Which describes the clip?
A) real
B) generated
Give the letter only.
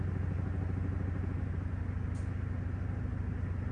A